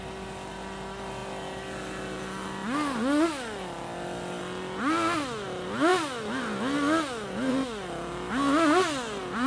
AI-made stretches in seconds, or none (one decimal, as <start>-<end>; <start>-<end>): none